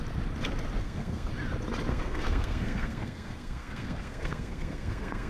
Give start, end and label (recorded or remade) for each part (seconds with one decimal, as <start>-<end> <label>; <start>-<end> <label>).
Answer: 0.0-0.8 recorded; 0.8-1.3 remade; 1.3-1.9 recorded; 1.9-5.3 remade